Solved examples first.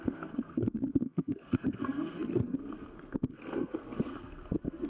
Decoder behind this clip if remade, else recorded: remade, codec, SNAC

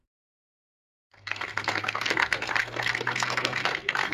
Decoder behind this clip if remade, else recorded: remade, codec, SNAC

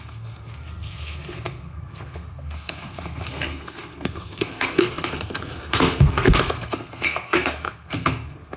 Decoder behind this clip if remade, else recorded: remade, codec, SNAC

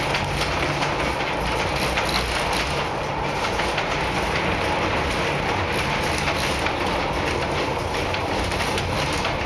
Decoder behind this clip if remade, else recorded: recorded